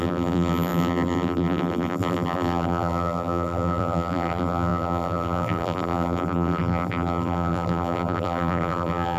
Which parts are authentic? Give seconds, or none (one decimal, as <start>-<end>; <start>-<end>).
none